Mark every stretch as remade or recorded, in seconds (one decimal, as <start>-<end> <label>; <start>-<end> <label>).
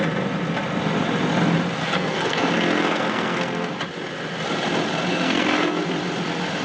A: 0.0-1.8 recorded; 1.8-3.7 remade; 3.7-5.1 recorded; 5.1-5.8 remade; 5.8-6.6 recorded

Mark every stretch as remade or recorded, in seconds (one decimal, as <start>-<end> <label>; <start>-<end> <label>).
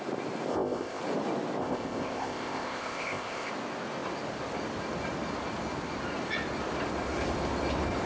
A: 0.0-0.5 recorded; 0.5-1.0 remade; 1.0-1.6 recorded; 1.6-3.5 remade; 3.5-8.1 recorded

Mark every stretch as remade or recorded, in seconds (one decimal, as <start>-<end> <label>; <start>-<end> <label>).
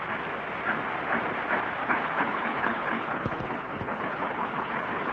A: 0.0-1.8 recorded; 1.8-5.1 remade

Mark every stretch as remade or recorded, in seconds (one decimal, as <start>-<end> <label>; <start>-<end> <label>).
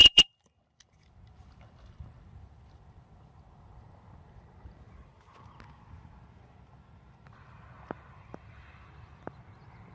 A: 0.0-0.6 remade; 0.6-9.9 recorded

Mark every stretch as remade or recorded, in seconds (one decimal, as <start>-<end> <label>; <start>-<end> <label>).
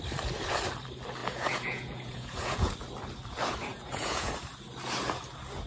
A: 0.0-1.2 recorded; 1.2-2.7 remade; 2.7-3.7 recorded; 3.7-4.3 remade; 4.3-5.7 recorded